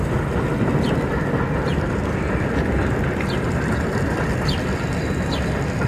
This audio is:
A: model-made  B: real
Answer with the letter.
B